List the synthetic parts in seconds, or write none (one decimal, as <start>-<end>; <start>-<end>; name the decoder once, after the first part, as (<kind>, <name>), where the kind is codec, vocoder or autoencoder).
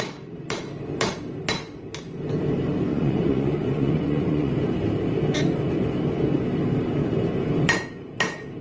2.9-4.5 (vocoder, Vocos)